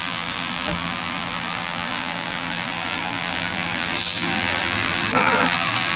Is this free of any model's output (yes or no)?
no